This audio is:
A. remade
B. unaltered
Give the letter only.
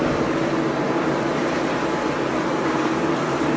B